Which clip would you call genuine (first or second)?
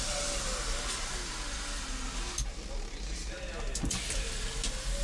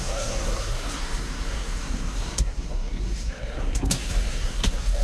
first